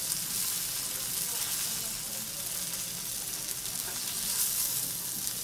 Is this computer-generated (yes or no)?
no